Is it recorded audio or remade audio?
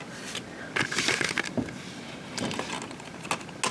recorded